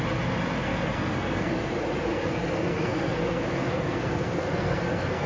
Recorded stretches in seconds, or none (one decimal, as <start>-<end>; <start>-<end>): 0.0-0.6; 1.7-2.1